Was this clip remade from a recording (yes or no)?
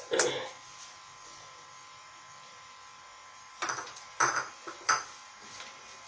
no